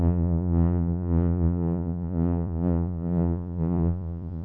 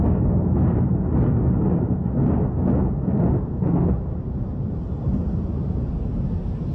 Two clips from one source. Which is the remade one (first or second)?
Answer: first